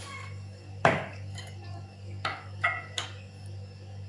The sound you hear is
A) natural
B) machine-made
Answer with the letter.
B